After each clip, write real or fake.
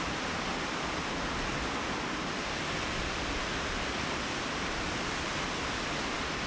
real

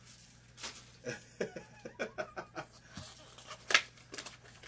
real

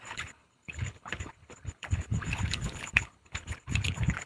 fake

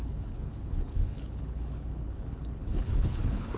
fake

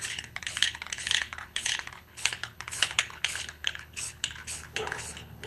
fake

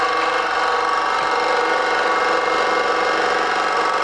real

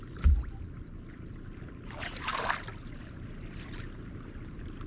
real